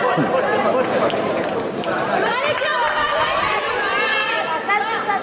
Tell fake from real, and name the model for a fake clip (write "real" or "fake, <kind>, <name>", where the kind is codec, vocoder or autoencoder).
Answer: real